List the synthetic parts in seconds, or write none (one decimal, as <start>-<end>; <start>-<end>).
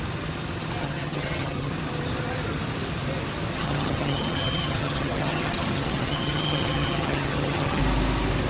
0.8-1.7; 3.5-7.8